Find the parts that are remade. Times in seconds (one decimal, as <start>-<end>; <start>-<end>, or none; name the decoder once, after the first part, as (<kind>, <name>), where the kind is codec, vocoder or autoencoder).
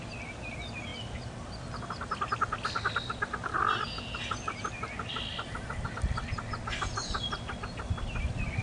none